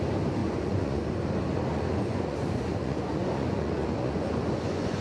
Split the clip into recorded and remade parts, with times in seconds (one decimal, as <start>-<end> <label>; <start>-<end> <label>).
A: 0.0-0.4 recorded; 0.4-1.1 remade; 1.1-1.7 recorded; 1.7-5.0 remade